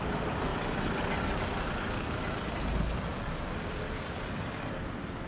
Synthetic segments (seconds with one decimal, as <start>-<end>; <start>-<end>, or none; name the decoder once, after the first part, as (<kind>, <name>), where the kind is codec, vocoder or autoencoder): none